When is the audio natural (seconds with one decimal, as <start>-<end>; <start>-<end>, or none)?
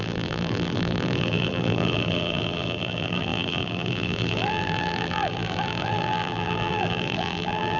none